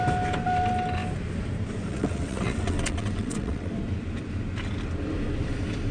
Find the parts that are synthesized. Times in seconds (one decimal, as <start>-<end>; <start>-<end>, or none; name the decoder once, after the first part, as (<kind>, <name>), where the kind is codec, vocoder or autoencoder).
1.9-3.7 (vocoder, WaveNeXt)